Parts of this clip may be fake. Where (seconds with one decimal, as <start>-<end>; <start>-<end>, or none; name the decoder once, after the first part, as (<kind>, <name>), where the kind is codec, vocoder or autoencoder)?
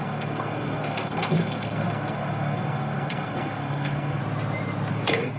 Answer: 0.0-4.2 (codec, SNAC); 4.9-5.4